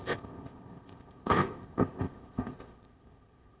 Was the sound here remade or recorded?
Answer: remade